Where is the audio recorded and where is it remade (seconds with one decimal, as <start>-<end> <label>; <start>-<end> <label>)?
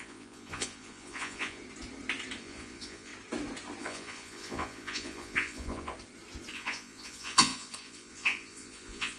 0.0-1.6 remade; 1.6-2.4 recorded; 2.4-3.1 remade; 3.1-3.8 recorded; 3.8-5.9 remade; 5.9-6.5 recorded; 6.5-9.2 remade